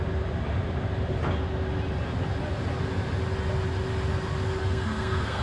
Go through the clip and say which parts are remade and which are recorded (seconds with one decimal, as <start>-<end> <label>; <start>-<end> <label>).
0.0-4.6 recorded; 4.6-5.4 remade